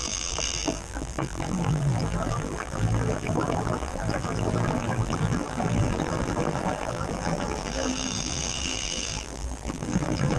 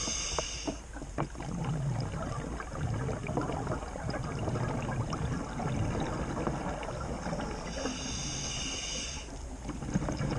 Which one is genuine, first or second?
second